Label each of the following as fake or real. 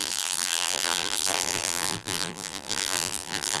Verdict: fake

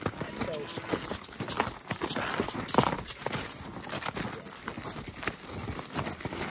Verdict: real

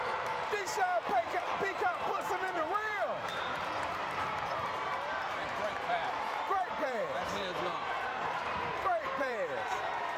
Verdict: fake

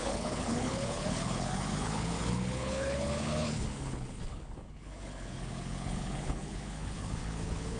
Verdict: fake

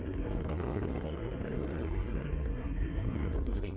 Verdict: fake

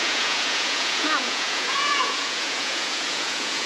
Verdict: fake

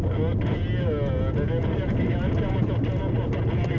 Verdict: real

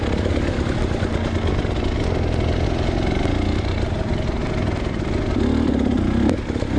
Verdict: real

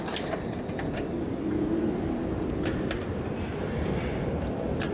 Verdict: real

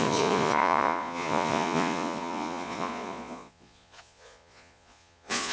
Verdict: fake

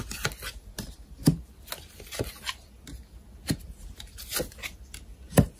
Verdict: real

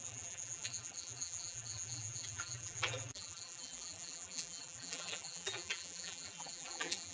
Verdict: fake